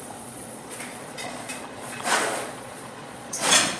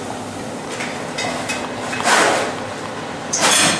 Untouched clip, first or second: second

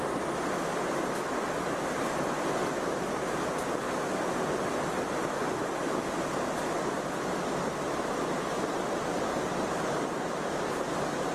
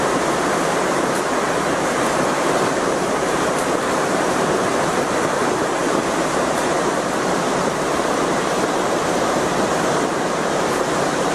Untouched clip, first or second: first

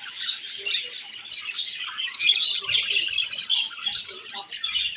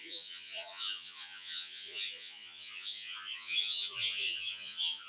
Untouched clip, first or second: first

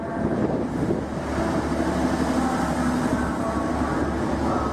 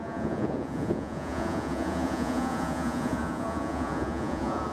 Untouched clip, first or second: first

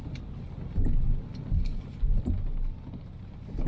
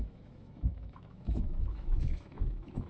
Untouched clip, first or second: first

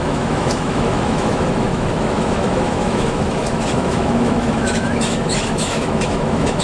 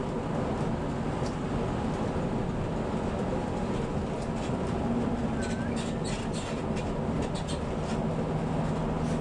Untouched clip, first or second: second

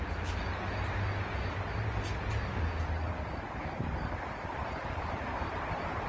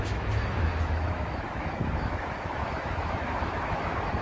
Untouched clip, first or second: first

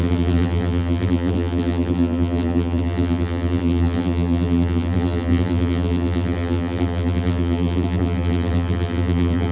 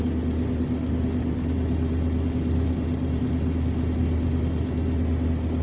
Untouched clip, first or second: second